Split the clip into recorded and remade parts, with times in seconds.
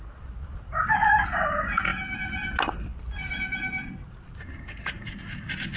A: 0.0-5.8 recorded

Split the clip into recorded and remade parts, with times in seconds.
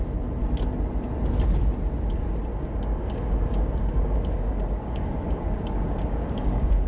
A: 0.0-2.5 recorded; 2.5-6.9 remade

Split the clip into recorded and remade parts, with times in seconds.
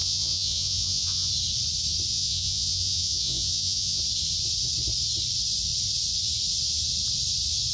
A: 0.0-1.3 remade; 1.3-2.1 recorded; 2.1-4.0 remade; 4.0-7.7 recorded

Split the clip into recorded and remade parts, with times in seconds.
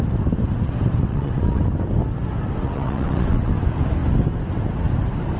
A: 0.0-1.0 recorded; 1.0-1.6 remade; 1.6-2.6 recorded; 2.6-3.5 remade; 3.5-5.4 recorded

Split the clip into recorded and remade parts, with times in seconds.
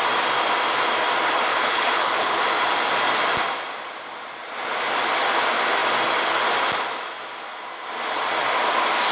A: 0.0-1.5 recorded; 1.5-2.4 remade; 2.4-9.1 recorded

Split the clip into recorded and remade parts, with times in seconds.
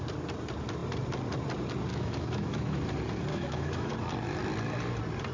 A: 0.0-1.9 recorded; 1.9-2.8 remade; 2.8-3.3 recorded; 3.3-3.9 remade; 3.9-5.3 recorded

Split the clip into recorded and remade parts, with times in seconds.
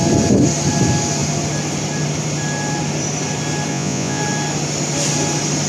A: 0.0-3.7 recorded; 3.7-4.2 remade; 4.2-5.7 recorded